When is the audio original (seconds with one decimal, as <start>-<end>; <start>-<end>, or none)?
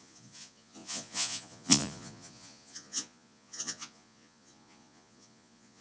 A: none